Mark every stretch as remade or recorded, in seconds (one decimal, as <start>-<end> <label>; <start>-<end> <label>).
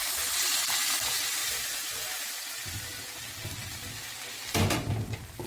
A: 0.0-2.9 remade; 2.9-5.5 recorded